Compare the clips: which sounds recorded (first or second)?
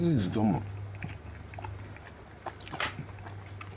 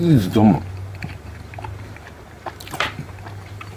first